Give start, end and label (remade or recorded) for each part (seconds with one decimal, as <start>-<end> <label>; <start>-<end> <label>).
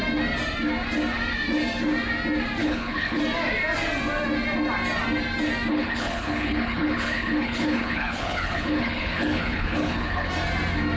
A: 0.0-2.6 recorded; 2.6-3.2 remade; 3.2-5.7 recorded; 5.7-10.3 remade; 10.3-11.0 recorded